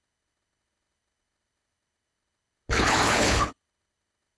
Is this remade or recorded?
remade